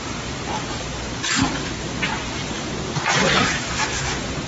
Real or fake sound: real